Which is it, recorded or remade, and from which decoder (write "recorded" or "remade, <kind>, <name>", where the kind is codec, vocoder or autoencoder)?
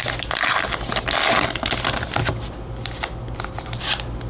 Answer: recorded